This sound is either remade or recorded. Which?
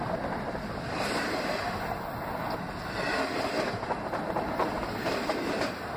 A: recorded